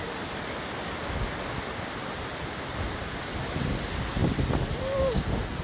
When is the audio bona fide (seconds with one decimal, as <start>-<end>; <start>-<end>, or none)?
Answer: 0.0-4.2; 5.0-5.6